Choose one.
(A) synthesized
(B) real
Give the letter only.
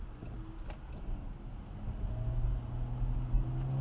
B